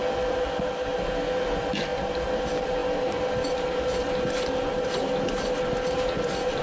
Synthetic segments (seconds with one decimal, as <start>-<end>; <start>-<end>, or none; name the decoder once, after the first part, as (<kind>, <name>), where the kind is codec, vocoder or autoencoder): none